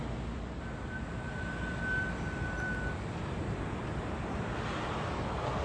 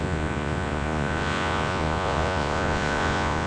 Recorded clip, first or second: first